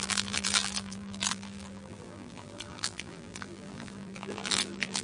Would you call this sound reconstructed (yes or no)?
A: yes